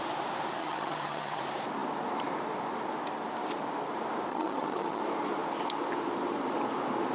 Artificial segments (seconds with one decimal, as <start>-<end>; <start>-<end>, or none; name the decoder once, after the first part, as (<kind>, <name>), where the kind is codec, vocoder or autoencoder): 0.6-1.4 (vocoder, HiFi-GAN); 4.3-5.0